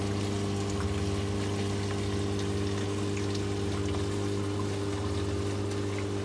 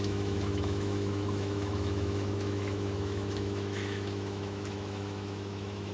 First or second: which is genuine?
first